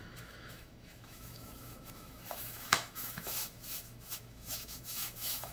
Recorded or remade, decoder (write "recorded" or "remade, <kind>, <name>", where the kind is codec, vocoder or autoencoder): remade, autoencoder, DAC-VAE